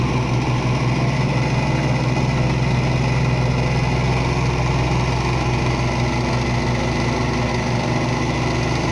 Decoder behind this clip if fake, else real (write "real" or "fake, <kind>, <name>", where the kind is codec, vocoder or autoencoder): real